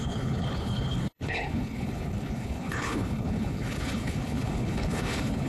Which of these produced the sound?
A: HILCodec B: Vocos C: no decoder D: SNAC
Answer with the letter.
A